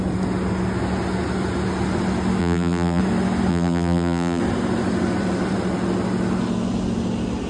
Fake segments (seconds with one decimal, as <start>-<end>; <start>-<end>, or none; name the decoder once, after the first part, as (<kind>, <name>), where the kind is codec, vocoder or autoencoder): 2.4-3.0 (vocoder, BigVGAN v2); 3.5-4.4